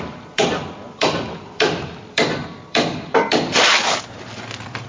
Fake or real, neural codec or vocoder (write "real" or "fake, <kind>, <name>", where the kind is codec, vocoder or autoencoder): fake, vocoder, BigVGAN v2